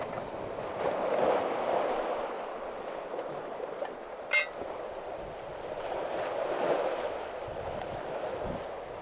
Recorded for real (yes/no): yes